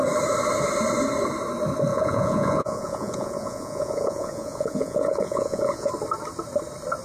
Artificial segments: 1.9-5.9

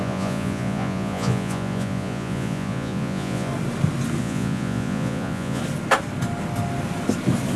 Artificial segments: 0.0-3.5; 4.2-5.6

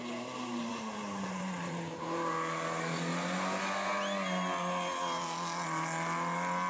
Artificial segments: 0.7-2.3